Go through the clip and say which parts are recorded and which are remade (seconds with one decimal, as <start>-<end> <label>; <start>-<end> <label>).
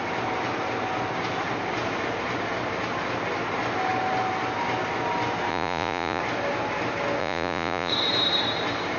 0.0-5.5 recorded; 5.5-6.2 remade; 6.2-7.2 recorded; 7.2-7.9 remade; 7.9-9.0 recorded